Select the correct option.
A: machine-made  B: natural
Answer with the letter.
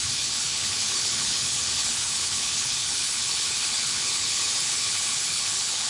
A